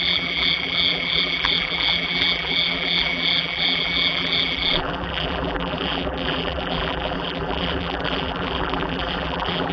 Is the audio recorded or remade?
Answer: remade